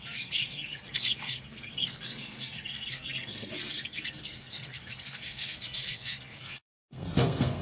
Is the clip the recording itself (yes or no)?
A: no